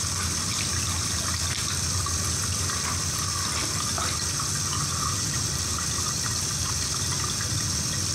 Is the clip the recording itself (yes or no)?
yes